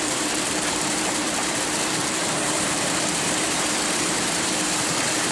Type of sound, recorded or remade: remade